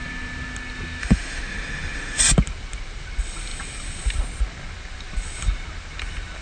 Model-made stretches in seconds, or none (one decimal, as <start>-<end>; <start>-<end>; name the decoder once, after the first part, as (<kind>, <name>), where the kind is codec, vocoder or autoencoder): 1.0-2.2 (autoencoder, DAC-VAE)